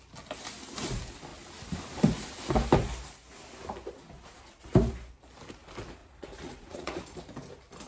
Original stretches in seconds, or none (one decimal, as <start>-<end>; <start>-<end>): 0.0-6.0; 7.0-7.9